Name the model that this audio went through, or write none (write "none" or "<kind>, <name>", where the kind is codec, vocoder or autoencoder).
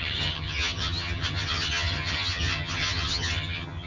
vocoder, HiFi-GAN